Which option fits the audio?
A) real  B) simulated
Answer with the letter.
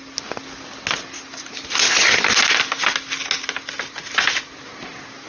A